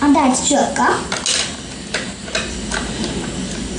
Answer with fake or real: real